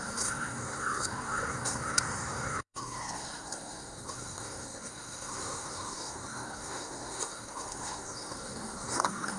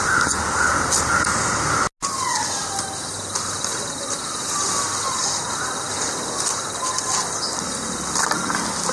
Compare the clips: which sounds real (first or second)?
second